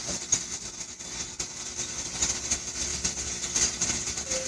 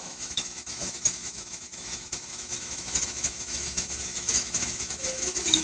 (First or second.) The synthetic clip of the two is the second